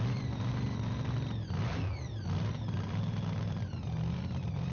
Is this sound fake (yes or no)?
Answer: yes